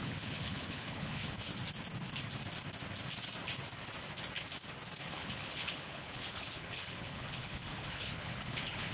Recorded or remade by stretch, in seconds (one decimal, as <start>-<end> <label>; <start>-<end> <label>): 0.0-1.5 remade; 1.5-5.0 recorded; 5.0-8.9 remade